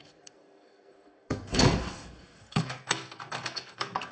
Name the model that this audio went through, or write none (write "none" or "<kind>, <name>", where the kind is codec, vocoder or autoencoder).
codec, SNAC